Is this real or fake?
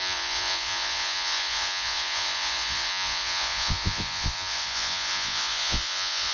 fake